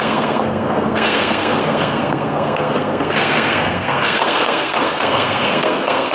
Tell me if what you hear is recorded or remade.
remade